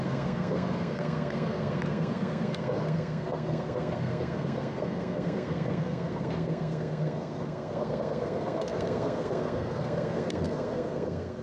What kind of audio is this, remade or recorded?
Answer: remade